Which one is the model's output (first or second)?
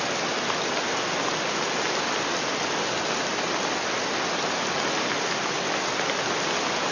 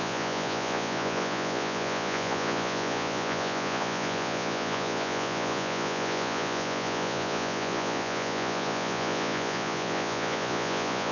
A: second